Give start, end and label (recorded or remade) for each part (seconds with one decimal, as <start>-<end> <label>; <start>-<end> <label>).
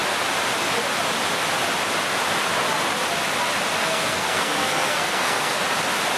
0.0-3.8 recorded; 3.8-5.6 remade; 5.6-6.2 recorded